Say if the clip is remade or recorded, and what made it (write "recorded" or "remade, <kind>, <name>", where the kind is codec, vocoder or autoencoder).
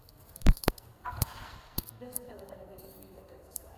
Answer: remade, codec, SNAC